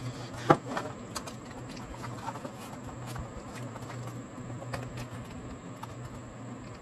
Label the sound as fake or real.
real